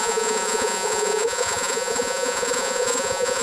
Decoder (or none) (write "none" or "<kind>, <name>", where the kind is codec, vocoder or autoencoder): vocoder, Vocos